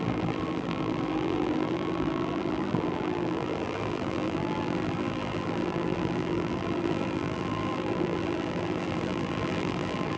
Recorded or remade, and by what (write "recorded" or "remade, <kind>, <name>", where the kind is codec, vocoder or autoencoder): remade, vocoder, BigVGAN v2